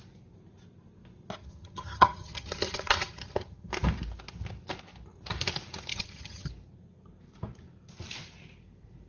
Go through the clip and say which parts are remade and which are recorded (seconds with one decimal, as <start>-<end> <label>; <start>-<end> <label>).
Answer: 0.0-1.4 recorded; 1.4-3.7 remade; 3.7-5.9 recorded; 5.9-6.5 remade; 6.5-9.1 recorded